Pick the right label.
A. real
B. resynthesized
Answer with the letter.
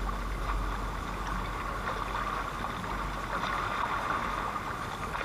A